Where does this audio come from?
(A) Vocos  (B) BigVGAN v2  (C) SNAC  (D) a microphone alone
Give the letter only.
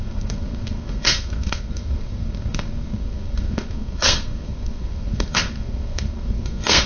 C